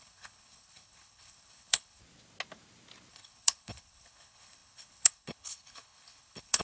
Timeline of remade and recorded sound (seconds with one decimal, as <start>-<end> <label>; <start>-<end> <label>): 0.0-2.0 remade; 2.0-3.1 recorded; 3.1-6.6 remade